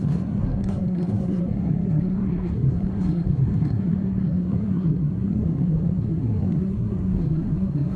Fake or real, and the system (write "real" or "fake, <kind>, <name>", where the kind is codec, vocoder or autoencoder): fake, codec, SNAC